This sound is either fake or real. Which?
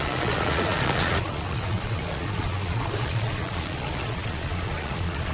fake